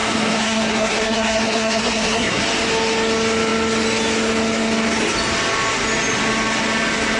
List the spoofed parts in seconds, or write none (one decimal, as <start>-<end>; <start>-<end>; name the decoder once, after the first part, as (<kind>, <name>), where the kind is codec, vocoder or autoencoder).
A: 0.0-2.4 (codec, SNAC)